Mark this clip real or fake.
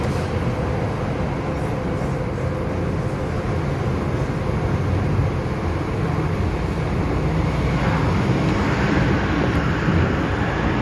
real